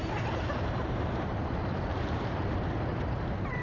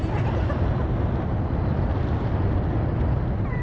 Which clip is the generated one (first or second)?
first